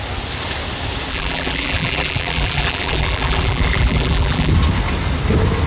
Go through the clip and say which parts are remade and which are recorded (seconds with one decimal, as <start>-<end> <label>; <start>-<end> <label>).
0.0-1.1 recorded; 1.1-4.5 remade; 4.5-5.7 recorded